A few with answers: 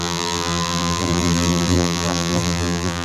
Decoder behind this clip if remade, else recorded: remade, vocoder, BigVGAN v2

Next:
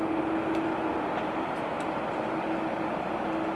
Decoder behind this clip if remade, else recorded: recorded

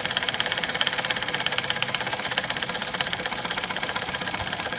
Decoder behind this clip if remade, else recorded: remade, vocoder, BigVGAN v2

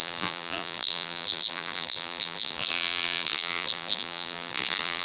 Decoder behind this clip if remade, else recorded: remade, vocoder, BigVGAN v2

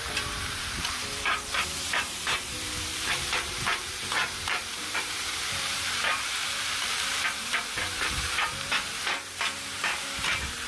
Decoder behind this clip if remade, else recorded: remade, vocoder, BigVGAN v2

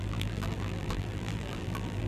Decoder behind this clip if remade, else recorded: remade, vocoder, BigVGAN v2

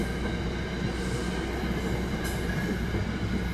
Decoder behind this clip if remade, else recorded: recorded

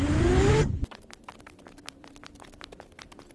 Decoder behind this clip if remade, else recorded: remade, vocoder, BigVGAN v2